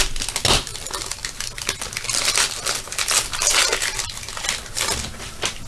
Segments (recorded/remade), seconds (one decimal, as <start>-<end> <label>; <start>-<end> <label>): 0.0-5.7 recorded